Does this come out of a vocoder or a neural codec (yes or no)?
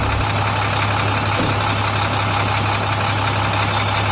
no